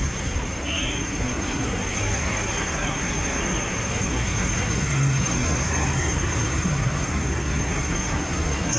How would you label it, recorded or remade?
remade